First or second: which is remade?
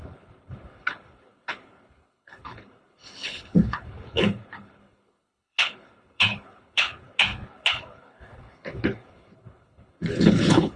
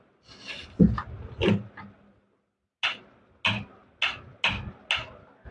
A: first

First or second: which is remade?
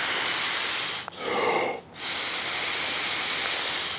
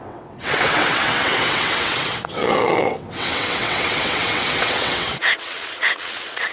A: second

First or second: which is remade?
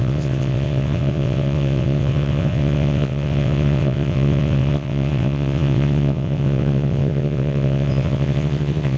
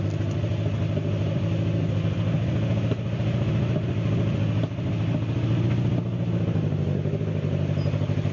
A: first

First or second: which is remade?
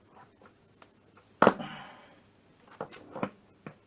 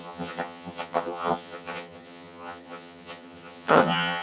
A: second